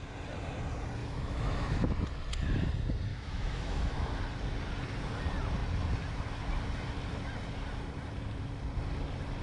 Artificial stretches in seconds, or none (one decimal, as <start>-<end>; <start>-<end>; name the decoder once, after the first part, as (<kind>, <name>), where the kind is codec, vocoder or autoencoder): 1.0-1.9 (autoencoder, DAC-VAE); 3.1-4.1